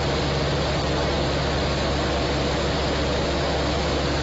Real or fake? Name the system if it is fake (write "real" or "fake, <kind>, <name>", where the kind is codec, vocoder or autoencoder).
real